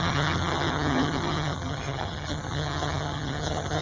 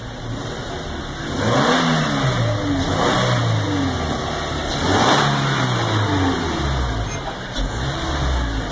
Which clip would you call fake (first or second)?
first